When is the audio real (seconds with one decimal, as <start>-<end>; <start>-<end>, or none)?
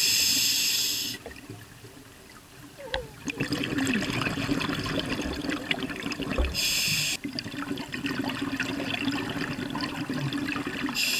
0.0-11.2